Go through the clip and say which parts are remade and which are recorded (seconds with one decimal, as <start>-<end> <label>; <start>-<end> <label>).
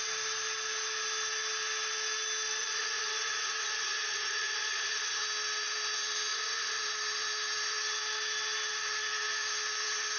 0.0-2.6 recorded; 2.6-5.2 remade; 5.2-6.3 recorded; 6.3-6.8 remade; 6.8-10.2 recorded